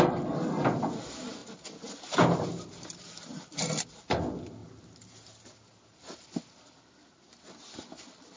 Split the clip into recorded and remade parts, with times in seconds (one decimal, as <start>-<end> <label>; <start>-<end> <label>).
0.0-8.4 recorded